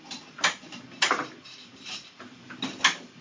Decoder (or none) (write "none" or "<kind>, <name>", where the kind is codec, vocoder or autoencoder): none